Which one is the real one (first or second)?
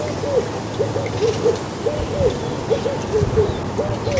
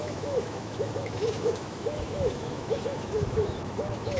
first